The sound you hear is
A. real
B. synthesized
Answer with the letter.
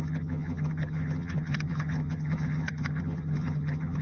B